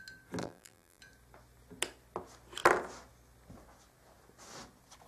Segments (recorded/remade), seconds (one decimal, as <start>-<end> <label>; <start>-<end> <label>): 0.0-0.4 recorded; 0.4-1.0 remade; 1.0-5.1 recorded